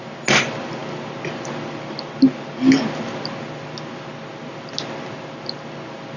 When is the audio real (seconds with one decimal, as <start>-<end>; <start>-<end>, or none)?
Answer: 0.0-6.2

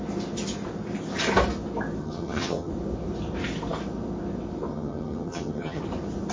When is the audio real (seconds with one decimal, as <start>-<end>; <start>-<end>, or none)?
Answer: 0.0-2.0; 2.7-4.7; 5.8-6.3

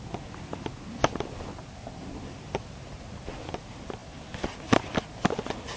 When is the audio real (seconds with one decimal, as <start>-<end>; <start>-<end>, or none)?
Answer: 0.0-5.8

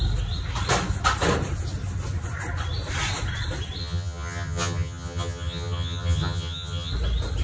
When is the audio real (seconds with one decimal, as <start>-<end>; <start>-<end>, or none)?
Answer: 0.0-3.8; 6.9-7.4

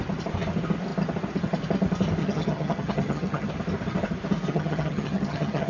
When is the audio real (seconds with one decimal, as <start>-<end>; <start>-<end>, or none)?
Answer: 0.0-2.2; 3.5-4.5

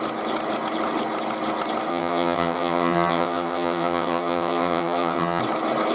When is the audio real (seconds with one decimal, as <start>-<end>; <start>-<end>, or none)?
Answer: 0.0-1.9; 5.4-5.9

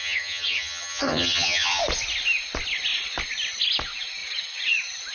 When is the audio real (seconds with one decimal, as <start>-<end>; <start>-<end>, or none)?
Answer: 1.8-5.1